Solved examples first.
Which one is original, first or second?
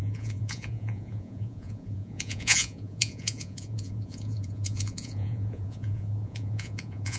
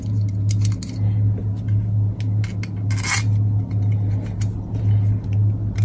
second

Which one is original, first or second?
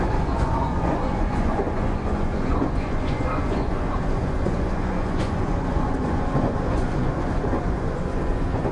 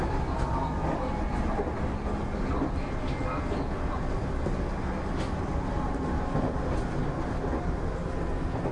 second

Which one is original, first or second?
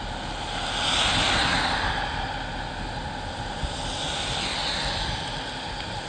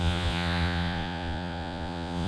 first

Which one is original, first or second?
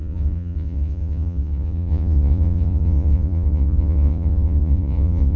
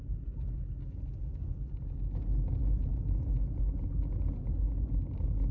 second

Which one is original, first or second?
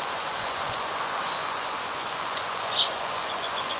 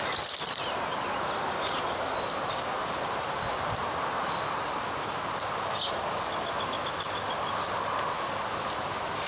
second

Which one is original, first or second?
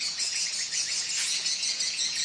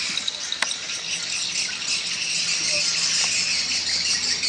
second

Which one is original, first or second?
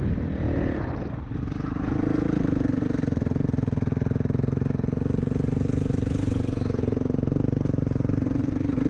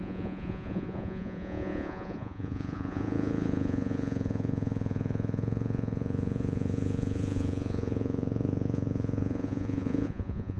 first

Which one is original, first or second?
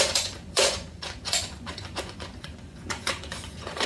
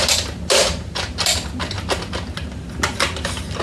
second